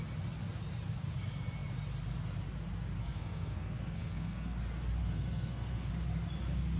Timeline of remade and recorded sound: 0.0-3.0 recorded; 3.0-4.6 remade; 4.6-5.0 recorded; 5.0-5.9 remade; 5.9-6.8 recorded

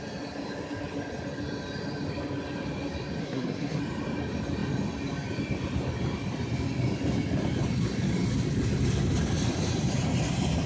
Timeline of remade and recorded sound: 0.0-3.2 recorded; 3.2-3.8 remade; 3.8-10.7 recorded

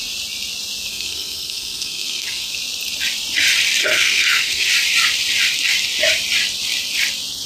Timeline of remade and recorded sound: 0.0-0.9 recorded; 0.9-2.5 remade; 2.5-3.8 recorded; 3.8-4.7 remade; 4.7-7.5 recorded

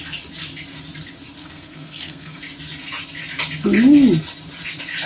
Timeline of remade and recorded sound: 0.0-1.4 recorded; 1.4-2.4 remade; 2.4-5.1 recorded

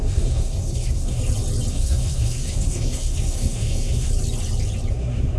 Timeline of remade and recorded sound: 0.0-1.2 remade; 1.2-1.7 recorded; 1.7-4.1 remade; 4.1-4.9 recorded; 4.9-5.4 remade

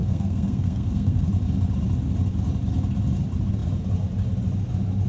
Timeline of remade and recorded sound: 0.0-1.3 remade; 1.3-5.1 recorded